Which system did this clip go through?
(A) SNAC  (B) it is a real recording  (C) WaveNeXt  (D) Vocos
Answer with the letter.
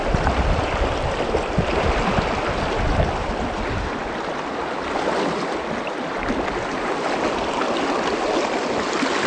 B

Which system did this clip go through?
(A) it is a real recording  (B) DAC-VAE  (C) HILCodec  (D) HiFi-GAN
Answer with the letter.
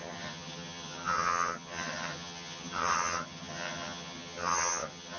D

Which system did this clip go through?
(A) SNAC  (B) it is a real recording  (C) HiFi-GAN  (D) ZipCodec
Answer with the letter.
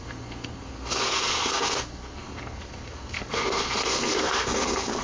A